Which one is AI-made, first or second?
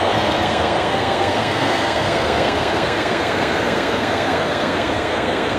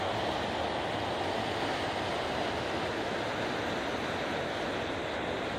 first